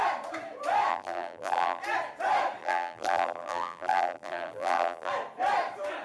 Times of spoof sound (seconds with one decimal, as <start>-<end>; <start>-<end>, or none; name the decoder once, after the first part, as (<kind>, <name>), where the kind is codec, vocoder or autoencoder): 0.9-1.8 (vocoder, BigVGAN v2); 2.6-5.1